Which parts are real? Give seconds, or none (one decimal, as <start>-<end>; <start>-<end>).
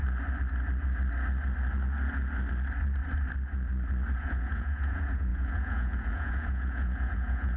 0.0-4.2